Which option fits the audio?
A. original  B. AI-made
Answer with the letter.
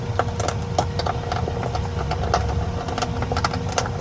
A